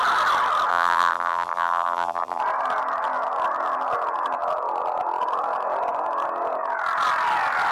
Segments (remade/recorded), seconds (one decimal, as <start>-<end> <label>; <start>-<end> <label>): 0.0-0.7 recorded; 0.7-2.4 remade; 2.4-7.7 recorded